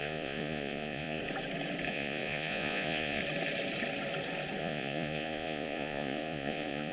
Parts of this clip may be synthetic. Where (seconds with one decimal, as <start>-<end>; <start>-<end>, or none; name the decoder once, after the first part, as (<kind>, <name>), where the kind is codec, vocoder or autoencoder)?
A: 0.0-1.2 (vocoder, Vocos); 1.9-3.2; 4.6-6.9